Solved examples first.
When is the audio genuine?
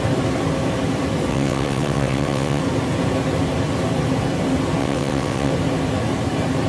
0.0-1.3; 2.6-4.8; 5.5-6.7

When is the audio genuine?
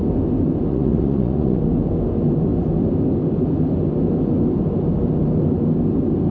0.0-0.7; 1.6-6.3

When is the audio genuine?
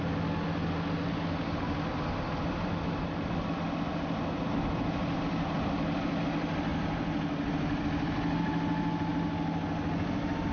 0.0-10.5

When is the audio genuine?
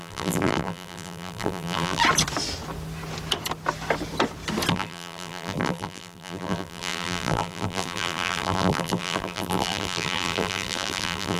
2.0-4.7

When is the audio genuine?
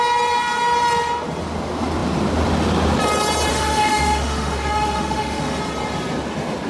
0.0-3.5; 5.6-6.7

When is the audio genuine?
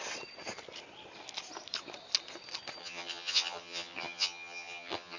0.0-2.8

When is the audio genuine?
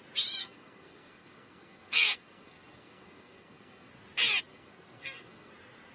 0.0-0.4; 3.9-4.5; 5.5-5.9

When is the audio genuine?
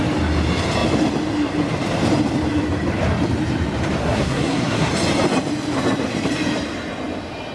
0.0-4.0; 4.9-7.5